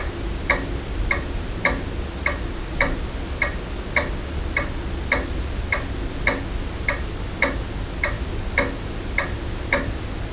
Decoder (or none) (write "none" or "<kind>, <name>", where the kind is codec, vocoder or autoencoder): none